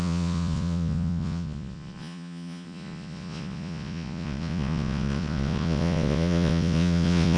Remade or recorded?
remade